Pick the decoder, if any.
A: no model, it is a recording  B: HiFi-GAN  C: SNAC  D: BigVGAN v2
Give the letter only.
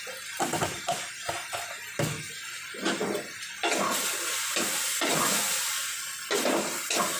A